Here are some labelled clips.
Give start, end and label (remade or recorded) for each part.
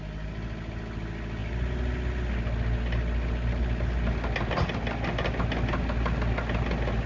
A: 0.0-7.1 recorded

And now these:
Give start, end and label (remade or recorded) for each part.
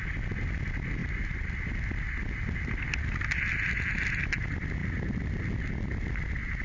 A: 0.0-6.6 recorded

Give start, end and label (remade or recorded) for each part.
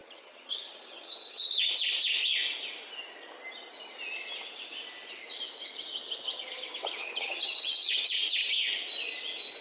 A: 0.0-1.7 remade; 1.7-7.0 recorded; 7.0-8.1 remade; 8.1-9.6 recorded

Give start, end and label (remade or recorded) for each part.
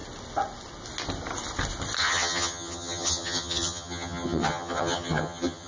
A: 0.0-2.0 recorded; 2.0-5.7 remade